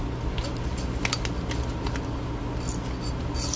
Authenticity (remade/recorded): recorded